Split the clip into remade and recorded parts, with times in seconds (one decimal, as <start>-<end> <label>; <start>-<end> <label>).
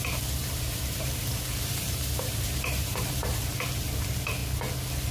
0.0-0.4 recorded; 0.4-3.5 remade; 3.5-5.1 recorded